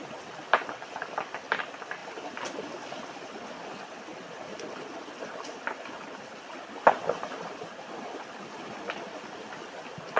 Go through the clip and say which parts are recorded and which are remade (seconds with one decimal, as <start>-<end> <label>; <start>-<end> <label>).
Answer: 0.0-4.1 recorded; 4.1-8.7 remade; 8.7-10.2 recorded